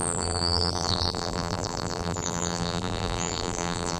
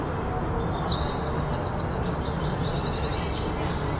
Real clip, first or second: second